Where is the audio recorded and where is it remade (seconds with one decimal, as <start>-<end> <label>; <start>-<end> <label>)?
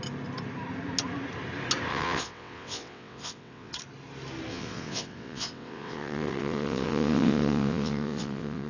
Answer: 0.0-1.9 recorded; 1.9-3.7 remade; 3.7-4.5 recorded; 4.5-8.7 remade